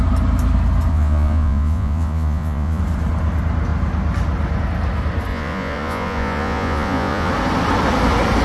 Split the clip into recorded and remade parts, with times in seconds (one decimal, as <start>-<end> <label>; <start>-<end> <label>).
0.0-0.9 recorded; 0.9-2.8 remade; 2.8-5.3 recorded; 5.3-7.3 remade; 7.3-8.4 recorded